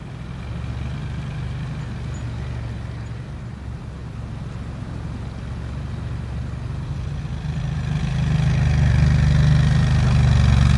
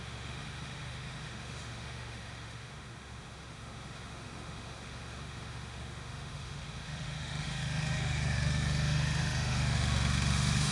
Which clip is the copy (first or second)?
second